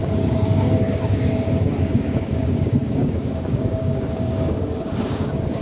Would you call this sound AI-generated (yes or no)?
yes